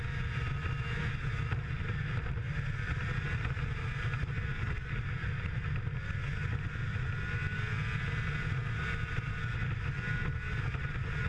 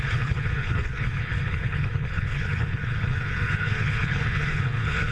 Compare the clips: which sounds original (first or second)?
first